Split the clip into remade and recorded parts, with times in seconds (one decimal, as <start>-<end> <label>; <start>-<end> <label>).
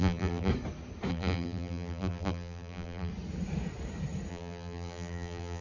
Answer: 0.0-0.5 remade; 0.5-1.1 recorded; 1.1-3.1 remade; 3.1-4.3 recorded; 4.3-5.6 remade